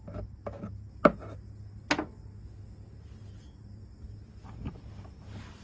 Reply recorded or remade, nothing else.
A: recorded